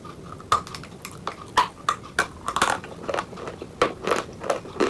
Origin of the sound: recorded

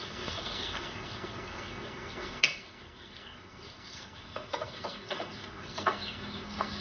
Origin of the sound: remade